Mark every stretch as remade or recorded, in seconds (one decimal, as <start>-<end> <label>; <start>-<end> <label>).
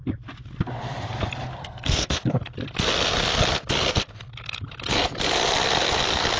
0.0-1.6 recorded; 1.6-2.4 remade; 2.4-6.4 recorded